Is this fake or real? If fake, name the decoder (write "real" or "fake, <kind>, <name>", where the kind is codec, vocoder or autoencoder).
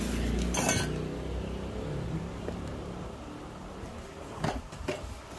real